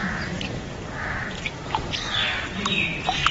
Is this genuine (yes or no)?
yes